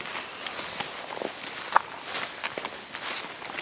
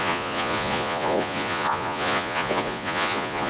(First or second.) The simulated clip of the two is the second